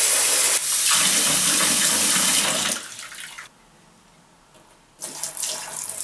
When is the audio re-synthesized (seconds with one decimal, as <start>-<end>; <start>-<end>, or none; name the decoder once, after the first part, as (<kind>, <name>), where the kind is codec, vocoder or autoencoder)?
none